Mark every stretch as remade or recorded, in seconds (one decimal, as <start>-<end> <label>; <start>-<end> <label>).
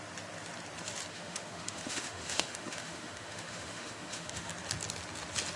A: 0.0-1.1 recorded; 1.1-4.5 remade; 4.5-5.6 recorded